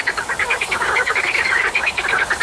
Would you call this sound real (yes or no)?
no